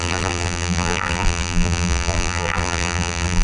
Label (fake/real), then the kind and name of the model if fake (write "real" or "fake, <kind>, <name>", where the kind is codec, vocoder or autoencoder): fake, vocoder, BigVGAN v2